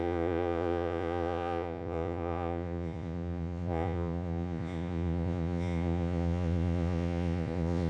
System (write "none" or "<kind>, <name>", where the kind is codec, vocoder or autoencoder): vocoder, Vocos